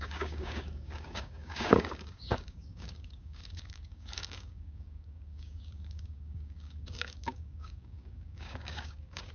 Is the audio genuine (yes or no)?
no